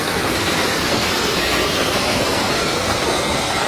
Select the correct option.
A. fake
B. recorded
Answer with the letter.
A